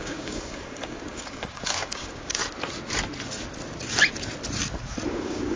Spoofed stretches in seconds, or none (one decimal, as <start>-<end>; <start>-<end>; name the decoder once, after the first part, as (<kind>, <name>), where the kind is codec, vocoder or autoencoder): 0.0-2.4 (codec, DAC); 5.1-5.6